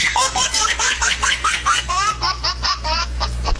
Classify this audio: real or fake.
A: fake